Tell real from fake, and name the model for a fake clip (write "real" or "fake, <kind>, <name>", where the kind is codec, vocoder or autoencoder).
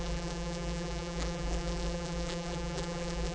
fake, vocoder, BigVGAN v2